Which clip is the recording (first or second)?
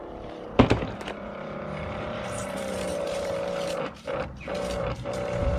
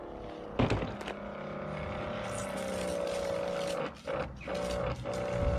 second